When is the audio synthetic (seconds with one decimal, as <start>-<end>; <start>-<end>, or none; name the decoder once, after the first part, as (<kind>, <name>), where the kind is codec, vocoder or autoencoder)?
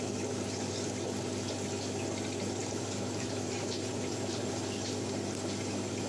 2.6-4.5 (vocoder, BigVGAN v2)